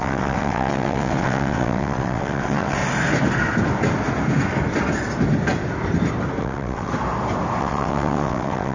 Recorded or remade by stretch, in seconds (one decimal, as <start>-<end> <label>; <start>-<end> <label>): 0.0-2.8 remade; 2.8-6.4 recorded; 6.4-6.9 remade; 6.9-7.6 recorded; 7.6-8.7 remade